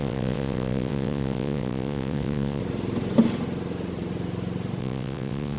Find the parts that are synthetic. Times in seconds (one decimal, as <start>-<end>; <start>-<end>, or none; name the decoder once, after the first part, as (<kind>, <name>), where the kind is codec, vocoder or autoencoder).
0.0-2.6 (vocoder, WaveNeXt); 4.8-5.6